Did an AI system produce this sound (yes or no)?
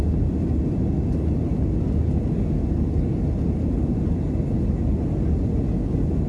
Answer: no